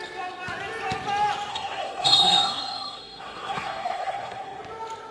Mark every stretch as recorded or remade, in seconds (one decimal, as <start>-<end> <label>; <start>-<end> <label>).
0.0-1.5 recorded; 1.5-4.6 remade; 4.6-5.1 recorded